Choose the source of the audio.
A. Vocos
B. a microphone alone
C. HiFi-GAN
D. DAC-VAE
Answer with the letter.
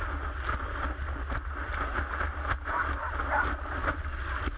B